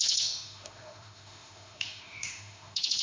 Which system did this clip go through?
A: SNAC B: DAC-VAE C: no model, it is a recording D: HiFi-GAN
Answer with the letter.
B